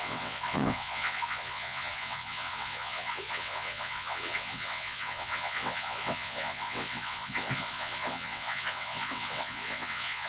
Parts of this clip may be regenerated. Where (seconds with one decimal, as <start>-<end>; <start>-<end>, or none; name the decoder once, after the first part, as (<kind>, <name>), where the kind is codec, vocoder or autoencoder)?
0.0-10.3 (vocoder, WaveNeXt)